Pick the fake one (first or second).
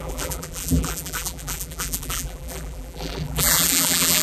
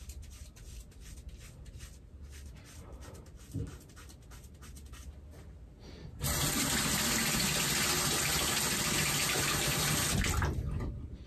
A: first